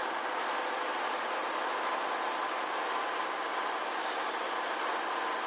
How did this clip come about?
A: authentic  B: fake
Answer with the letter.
A